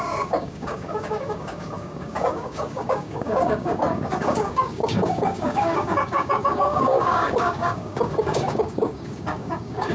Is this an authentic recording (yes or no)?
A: no